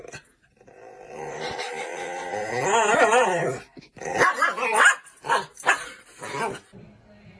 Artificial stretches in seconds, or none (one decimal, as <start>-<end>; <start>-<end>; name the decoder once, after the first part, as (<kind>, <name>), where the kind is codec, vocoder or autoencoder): none